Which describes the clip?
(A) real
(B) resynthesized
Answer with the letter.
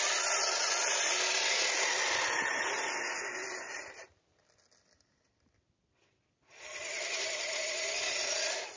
A